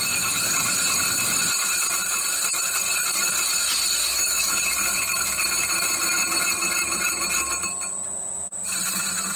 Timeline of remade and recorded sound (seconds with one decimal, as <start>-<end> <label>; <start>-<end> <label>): 0.0-4.0 recorded; 4.0-4.6 remade; 4.6-9.4 recorded